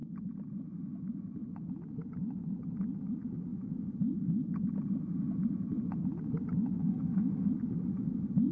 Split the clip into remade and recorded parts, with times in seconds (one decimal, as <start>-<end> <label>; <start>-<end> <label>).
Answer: 0.0-6.8 recorded; 6.8-7.5 remade; 7.5-8.5 recorded

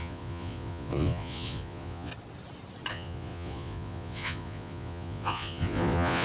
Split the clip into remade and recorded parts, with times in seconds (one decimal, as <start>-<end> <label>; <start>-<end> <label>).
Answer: 0.0-2.1 remade; 2.1-2.9 recorded; 2.9-6.2 remade

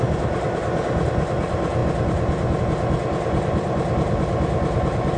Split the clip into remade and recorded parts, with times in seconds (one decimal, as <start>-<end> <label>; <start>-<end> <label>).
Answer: 0.0-5.2 recorded